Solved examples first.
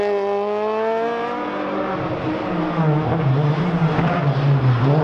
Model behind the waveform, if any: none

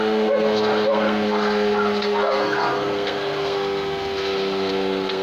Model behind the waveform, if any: codec, SNAC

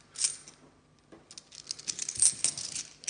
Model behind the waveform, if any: none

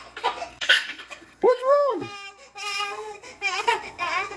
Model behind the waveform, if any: codec, SNAC